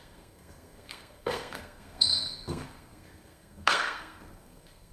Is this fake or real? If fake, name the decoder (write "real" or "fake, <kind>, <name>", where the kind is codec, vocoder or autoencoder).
fake, codec, SNAC